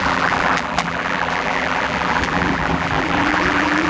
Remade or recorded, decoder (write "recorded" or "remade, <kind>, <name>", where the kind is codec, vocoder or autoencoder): remade, vocoder, BigVGAN v2